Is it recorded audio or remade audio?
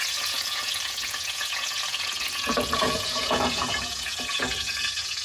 remade